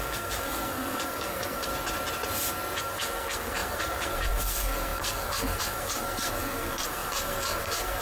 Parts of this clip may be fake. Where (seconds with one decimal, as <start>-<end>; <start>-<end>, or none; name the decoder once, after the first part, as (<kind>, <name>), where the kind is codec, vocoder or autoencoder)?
0.0-1.7 (codec, SNAC); 2.8-8.0